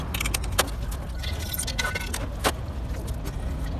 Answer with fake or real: real